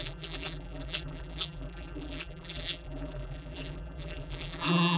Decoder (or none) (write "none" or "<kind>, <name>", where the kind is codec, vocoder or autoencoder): vocoder, BigVGAN v2